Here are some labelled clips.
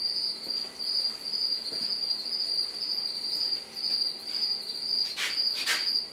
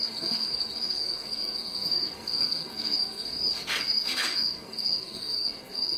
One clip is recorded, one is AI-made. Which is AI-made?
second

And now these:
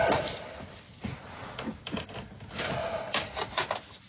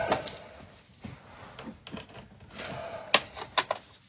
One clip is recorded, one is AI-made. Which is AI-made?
first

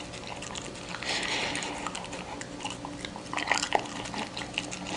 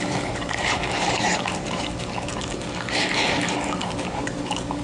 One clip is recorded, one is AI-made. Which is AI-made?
second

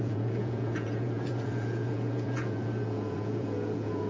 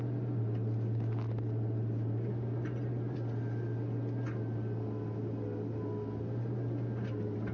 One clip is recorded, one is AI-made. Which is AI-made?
first